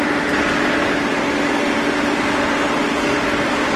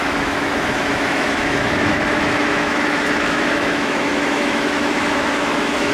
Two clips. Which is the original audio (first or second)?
first